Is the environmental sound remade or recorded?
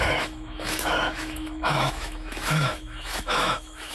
remade